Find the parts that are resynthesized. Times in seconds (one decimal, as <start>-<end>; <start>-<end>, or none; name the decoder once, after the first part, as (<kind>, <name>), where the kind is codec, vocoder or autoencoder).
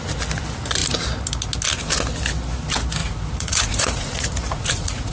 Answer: 3.0-5.1 (vocoder, Vocos)